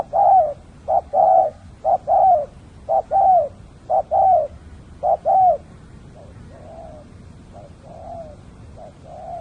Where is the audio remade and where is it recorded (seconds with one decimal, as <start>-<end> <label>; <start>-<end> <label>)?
0.0-1.1 recorded; 1.1-1.7 remade; 1.7-9.4 recorded